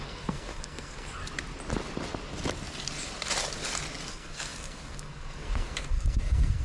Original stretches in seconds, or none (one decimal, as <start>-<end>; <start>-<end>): 1.2-4.1